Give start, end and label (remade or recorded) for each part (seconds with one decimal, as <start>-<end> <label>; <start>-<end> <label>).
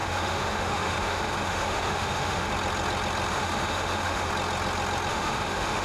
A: 0.0-2.5 remade; 2.5-3.3 recorded; 3.3-4.3 remade; 4.3-5.1 recorded; 5.1-5.8 remade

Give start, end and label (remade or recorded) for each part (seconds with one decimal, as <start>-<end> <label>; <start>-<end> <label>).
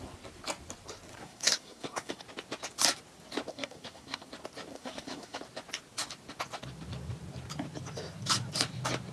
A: 0.0-1.1 recorded; 1.1-2.2 remade; 2.2-3.5 recorded; 3.5-4.3 remade; 4.3-4.7 recorded; 4.7-5.4 remade; 5.4-9.1 recorded